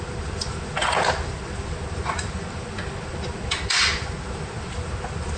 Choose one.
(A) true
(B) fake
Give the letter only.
A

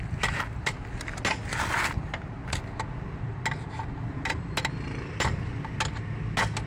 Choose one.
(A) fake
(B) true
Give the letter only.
B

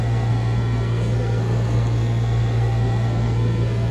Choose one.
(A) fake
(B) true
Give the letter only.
A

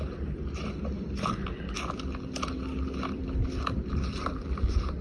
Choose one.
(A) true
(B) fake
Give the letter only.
A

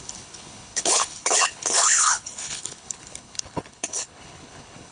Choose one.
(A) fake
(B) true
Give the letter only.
A